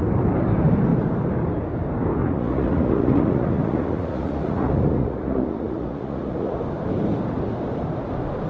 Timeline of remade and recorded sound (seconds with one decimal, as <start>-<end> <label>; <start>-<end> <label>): 0.0-2.2 recorded; 2.2-6.6 remade; 6.6-8.5 recorded